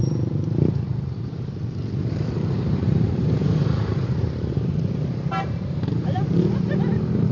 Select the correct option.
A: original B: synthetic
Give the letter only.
B